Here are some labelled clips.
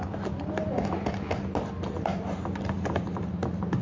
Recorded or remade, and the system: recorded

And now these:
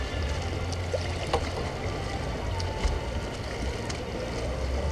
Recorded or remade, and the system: recorded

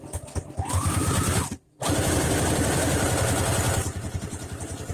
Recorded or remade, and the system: recorded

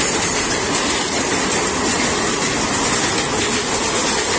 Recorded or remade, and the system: recorded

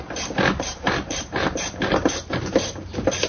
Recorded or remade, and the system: remade, vocoder, BigVGAN v2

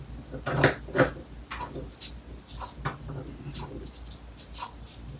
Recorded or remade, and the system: recorded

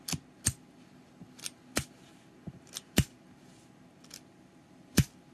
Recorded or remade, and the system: recorded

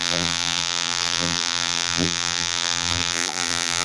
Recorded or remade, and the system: remade, vocoder, BigVGAN v2